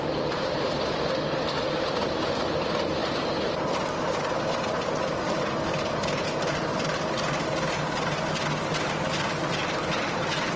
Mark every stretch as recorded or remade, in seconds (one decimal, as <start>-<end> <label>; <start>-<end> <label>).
0.0-10.6 recorded